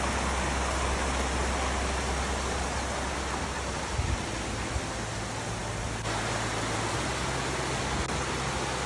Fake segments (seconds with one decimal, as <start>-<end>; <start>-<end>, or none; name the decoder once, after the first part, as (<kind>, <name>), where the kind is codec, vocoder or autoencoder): none